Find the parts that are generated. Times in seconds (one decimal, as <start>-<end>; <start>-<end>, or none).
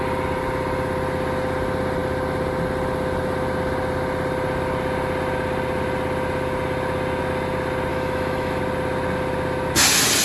7.9-8.6